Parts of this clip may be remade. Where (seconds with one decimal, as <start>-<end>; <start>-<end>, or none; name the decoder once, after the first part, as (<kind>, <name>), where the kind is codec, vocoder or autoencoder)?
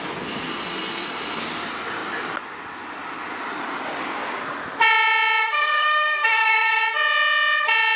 0.5-1.4 (codec, SNAC); 5.4-6.8